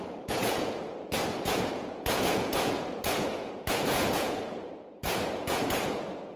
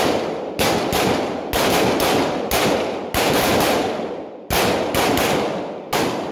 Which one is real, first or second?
second